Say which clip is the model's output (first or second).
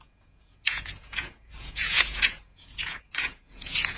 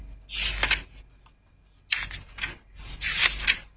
first